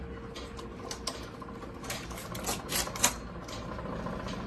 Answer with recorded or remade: recorded